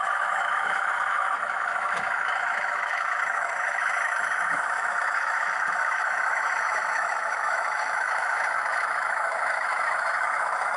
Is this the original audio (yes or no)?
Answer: no